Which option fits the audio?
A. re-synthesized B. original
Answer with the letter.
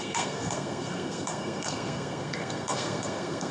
A